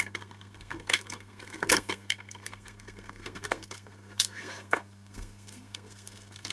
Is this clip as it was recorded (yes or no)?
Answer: no